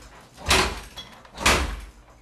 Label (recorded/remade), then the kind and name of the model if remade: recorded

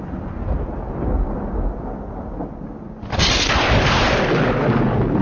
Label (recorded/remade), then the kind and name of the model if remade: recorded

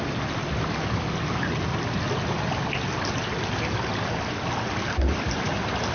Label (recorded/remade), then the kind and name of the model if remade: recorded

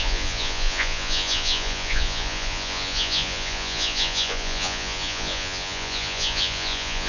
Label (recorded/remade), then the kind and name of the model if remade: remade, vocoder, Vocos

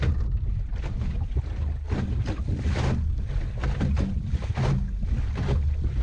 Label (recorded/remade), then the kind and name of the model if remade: recorded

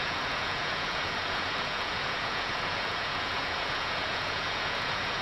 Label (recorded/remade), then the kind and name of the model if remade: remade, vocoder, Vocos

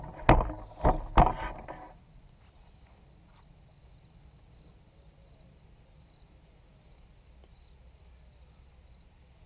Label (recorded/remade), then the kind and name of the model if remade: recorded